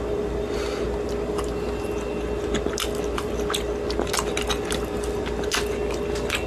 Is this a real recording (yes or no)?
yes